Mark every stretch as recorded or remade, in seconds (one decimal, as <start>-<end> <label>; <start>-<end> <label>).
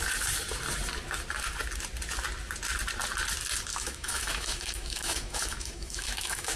0.0-3.7 recorded; 3.7-6.6 remade